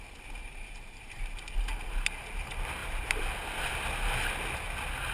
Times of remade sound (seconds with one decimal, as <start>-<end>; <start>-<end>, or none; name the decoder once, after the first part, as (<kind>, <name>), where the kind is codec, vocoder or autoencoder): 0.4-1.4 (vocoder, BigVGAN v2); 2.8-3.3